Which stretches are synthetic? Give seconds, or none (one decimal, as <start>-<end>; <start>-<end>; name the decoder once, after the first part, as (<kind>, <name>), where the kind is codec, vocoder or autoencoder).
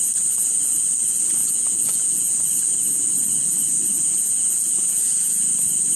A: 1.4-2.4 (vocoder, Vocos); 3.9-5.5